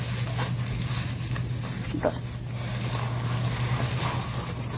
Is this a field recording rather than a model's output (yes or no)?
yes